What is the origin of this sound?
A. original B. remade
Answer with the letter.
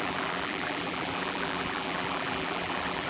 B